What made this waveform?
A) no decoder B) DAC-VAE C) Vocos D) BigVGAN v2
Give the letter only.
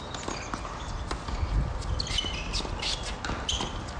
A